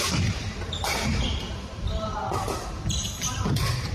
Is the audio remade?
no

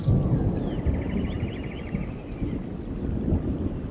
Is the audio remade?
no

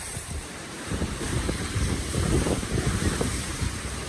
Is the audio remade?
yes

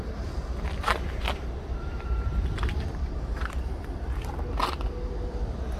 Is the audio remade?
yes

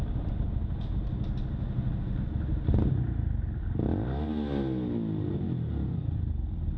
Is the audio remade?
no